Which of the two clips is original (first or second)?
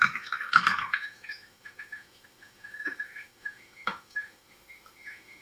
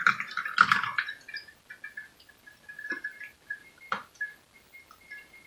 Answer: second